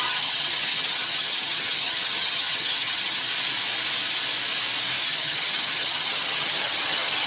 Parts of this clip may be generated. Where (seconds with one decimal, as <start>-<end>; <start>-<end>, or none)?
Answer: 0.0-3.3; 5.0-7.3